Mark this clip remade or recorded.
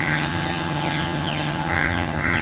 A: remade